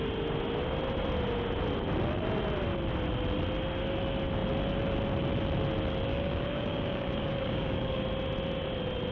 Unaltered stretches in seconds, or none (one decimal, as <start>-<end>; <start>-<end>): 0.0-6.1; 8.0-9.1

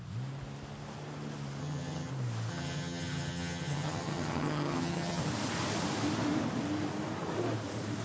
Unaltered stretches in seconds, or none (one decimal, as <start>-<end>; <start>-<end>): 0.0-1.6; 2.1-2.5; 5.2-8.0